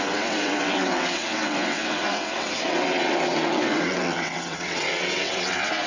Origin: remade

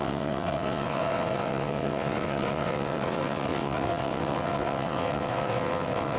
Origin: remade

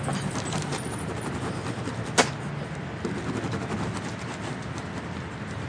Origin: recorded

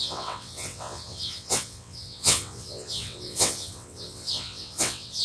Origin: remade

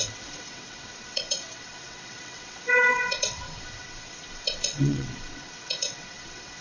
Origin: remade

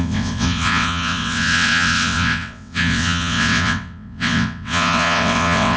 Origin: remade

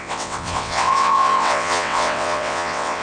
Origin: remade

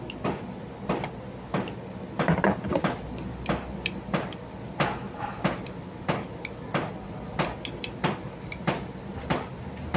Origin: recorded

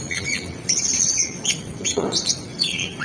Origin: remade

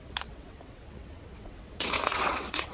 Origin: remade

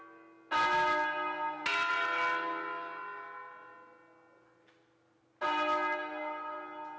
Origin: recorded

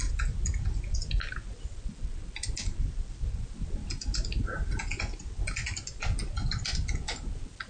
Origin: recorded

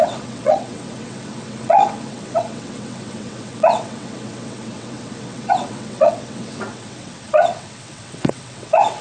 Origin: remade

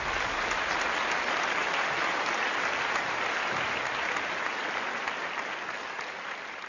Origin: recorded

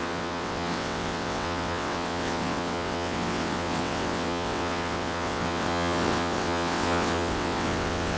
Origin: remade